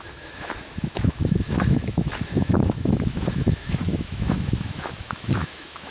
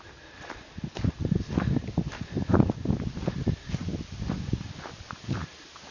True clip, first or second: second